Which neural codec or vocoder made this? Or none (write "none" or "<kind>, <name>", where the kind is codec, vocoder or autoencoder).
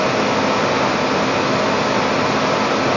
none